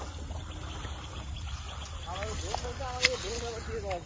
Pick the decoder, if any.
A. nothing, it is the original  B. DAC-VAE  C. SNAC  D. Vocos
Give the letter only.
A